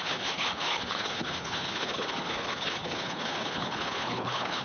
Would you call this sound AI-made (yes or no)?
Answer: yes